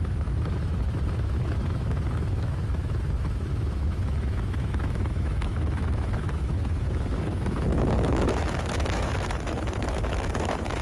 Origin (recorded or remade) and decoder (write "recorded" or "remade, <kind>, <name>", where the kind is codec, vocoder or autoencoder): remade, autoencoder, DAC-VAE